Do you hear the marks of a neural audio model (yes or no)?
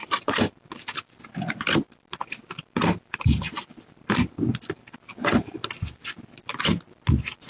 no